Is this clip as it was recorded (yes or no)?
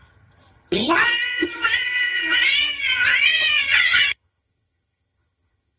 no